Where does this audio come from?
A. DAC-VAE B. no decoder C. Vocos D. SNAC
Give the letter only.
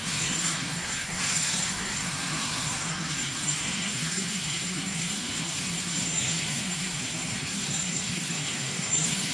D